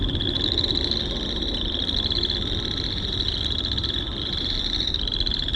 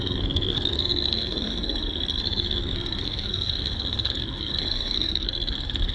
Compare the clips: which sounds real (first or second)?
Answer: first